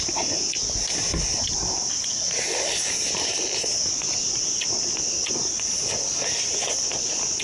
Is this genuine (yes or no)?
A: yes